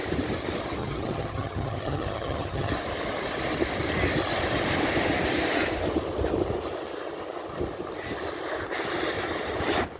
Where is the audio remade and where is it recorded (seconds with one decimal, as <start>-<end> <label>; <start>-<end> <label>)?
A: 0.0-0.8 recorded; 0.8-2.7 remade; 2.7-10.0 recorded